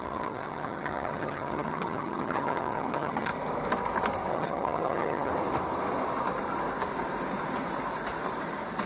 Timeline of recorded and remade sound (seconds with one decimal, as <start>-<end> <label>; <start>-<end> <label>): 0.0-3.3 remade; 3.3-4.3 recorded; 4.3-5.3 remade; 5.3-8.9 recorded